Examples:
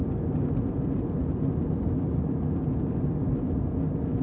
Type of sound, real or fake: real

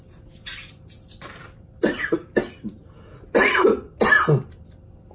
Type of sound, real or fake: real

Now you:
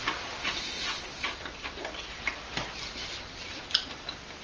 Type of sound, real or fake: real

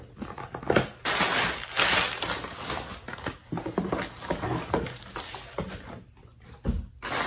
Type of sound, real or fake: real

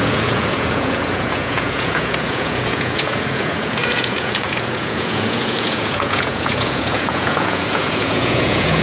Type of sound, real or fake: fake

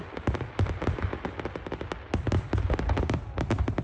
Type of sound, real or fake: real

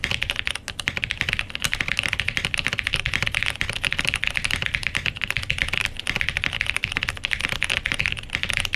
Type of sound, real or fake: real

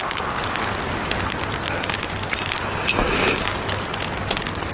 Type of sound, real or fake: real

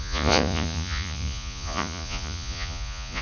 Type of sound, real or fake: fake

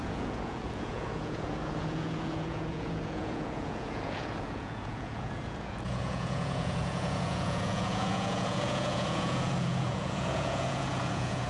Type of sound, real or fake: fake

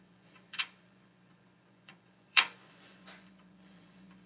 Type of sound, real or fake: fake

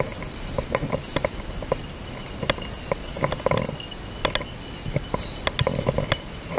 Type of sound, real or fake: real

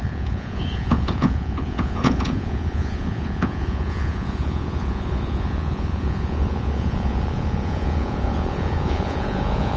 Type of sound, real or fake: fake